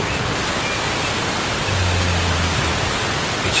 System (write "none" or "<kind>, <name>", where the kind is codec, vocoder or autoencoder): none